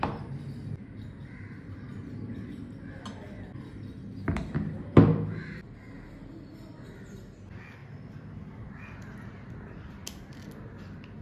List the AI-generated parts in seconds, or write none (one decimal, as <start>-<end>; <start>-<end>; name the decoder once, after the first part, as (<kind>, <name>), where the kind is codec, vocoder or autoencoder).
none